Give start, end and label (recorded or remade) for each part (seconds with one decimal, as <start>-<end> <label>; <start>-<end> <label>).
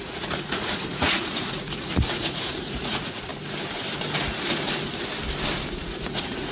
0.0-3.3 remade; 3.3-5.7 recorded; 5.7-6.5 remade